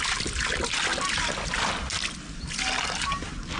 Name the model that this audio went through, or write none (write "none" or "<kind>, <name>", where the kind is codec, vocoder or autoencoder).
none